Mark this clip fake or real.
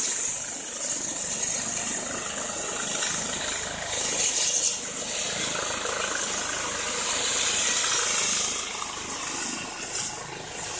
real